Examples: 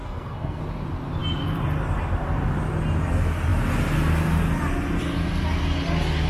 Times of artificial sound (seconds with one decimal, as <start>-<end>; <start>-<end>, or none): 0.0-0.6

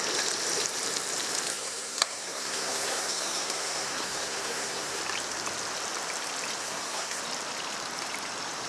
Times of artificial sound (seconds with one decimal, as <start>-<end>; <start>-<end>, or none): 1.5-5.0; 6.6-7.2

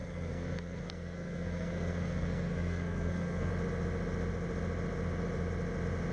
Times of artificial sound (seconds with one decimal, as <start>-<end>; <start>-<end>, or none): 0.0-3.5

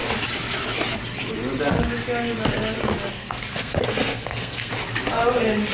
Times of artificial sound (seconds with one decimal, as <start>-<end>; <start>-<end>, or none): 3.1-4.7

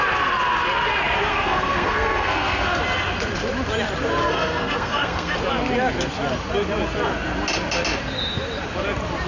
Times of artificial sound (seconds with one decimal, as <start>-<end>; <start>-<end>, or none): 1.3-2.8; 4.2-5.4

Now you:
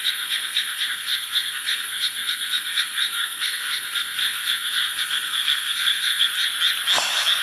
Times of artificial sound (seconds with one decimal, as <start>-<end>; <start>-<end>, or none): 0.0-6.3

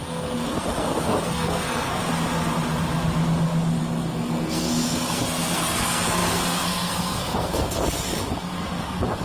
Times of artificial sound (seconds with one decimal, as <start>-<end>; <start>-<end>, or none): 0.0-2.0; 3.8-9.2

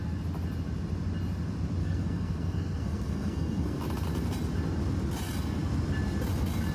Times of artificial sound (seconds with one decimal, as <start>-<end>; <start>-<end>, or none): 1.8-3.8